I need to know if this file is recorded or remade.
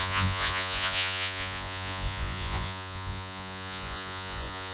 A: remade